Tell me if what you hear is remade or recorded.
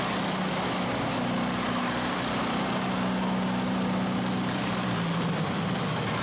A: recorded